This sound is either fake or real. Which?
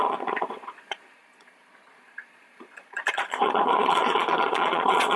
fake